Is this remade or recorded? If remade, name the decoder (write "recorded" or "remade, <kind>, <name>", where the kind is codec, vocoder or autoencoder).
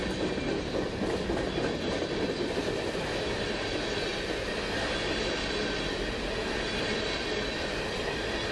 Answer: recorded